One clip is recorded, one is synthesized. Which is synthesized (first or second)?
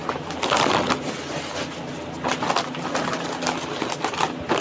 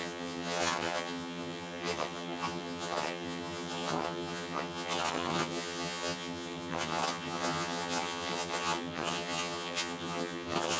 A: second